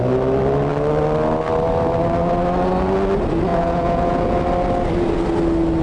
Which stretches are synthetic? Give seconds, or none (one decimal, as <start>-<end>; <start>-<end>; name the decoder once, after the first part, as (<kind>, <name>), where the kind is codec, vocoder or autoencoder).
3.5-4.4 (vocoder, Vocos)